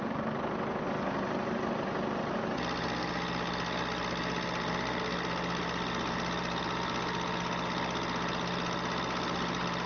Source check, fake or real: real